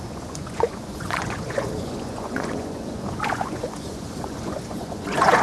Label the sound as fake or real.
fake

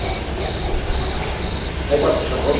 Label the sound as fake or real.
real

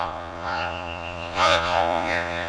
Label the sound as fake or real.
fake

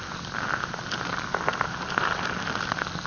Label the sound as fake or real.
real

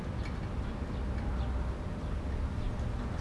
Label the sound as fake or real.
real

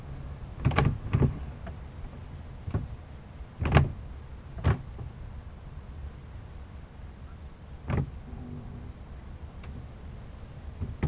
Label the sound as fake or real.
real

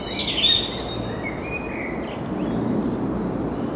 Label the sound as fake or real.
real